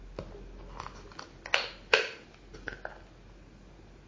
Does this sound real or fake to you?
real